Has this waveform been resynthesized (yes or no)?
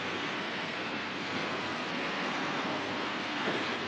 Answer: yes